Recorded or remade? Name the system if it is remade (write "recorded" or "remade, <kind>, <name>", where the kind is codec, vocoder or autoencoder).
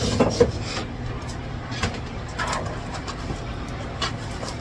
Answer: remade, vocoder, BigVGAN v2